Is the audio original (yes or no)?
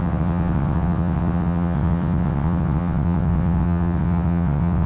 no